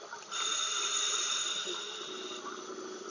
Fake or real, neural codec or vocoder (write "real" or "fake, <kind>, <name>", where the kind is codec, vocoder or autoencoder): real